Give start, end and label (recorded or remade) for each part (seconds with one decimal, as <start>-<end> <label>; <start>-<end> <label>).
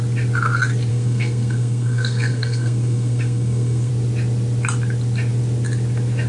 0.0-0.9 recorded; 0.9-3.9 remade; 3.9-6.3 recorded